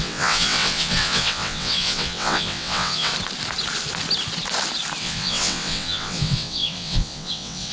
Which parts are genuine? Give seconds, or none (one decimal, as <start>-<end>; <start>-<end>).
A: 3.1-5.0